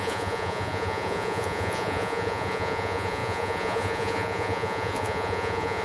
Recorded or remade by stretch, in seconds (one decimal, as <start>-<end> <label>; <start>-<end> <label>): 0.0-5.8 remade